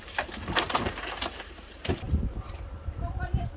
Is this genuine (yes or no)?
no